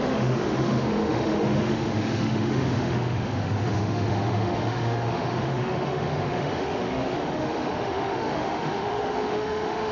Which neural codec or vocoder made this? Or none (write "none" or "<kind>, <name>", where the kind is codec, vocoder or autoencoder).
autoencoder, DAC-VAE